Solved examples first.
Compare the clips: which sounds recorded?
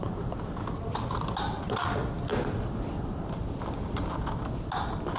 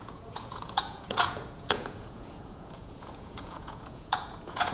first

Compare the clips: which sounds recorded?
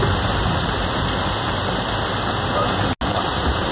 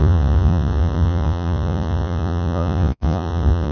first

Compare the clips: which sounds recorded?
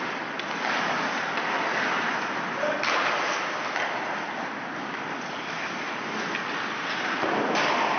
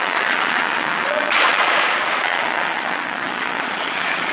first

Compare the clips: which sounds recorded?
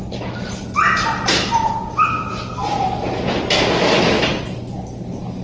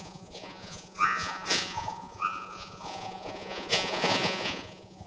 first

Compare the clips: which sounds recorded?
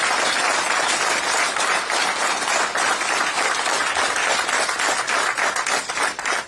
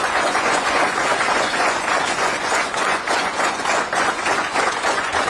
first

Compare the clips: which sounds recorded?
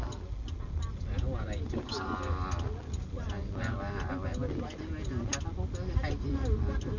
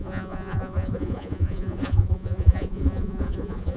first